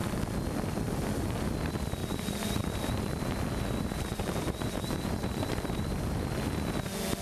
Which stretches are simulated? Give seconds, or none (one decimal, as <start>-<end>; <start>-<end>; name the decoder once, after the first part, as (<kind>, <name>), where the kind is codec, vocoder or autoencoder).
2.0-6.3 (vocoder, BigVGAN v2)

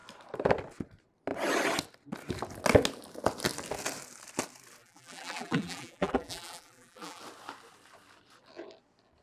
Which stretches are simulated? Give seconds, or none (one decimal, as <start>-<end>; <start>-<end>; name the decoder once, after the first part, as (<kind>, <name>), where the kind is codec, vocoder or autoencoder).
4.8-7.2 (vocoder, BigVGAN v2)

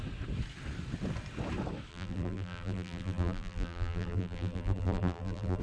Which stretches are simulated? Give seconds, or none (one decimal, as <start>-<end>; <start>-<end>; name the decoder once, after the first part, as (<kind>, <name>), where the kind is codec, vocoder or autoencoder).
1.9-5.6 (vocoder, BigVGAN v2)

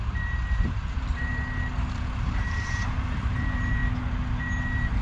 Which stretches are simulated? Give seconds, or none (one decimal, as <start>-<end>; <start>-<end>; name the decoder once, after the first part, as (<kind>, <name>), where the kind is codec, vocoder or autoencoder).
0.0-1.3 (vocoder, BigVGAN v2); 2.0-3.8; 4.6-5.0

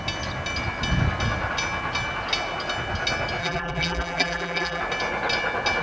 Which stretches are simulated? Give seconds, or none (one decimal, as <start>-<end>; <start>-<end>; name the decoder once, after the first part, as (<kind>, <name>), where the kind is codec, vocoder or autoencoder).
3.4-4.8 (vocoder, BigVGAN v2)

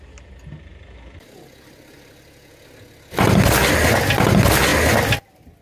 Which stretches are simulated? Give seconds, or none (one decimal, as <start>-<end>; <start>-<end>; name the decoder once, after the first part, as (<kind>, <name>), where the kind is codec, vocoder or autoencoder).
none

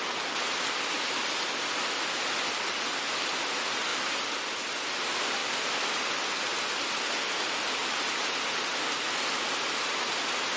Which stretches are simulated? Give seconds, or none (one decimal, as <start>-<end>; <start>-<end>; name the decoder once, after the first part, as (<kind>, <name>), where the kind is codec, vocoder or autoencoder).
5.4-6.1 (vocoder, BigVGAN v2); 7.8-8.7

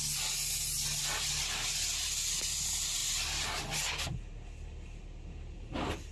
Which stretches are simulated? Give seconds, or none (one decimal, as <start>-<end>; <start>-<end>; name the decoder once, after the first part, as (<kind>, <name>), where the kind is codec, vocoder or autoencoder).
none